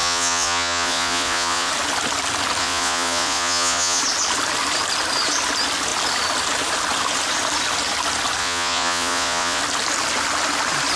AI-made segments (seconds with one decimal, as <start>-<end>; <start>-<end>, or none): 0.0-1.7; 2.6-4.0; 8.4-9.6